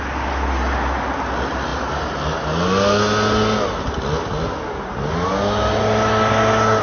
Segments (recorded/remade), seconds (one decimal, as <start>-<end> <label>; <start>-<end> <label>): 0.0-6.8 recorded